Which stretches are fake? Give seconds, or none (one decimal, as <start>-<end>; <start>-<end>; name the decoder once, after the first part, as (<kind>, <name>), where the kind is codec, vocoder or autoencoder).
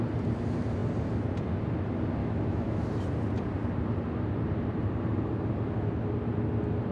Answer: 2.2-2.8 (autoencoder, DAC-VAE)